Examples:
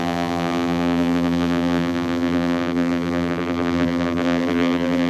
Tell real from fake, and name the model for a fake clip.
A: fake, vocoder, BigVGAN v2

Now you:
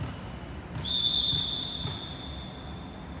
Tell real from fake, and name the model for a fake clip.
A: real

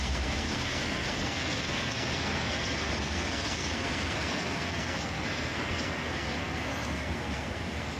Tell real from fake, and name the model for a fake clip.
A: fake, codec, SNAC